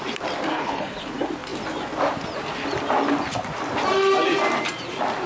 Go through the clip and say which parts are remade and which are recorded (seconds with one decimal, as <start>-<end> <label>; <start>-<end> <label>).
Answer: 0.0-0.5 recorded; 0.5-1.1 remade; 1.1-5.3 recorded